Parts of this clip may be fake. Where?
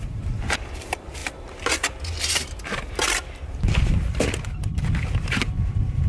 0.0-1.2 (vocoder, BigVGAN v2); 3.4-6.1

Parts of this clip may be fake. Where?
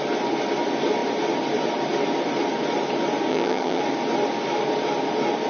3.3-3.8 (vocoder, HiFi-GAN)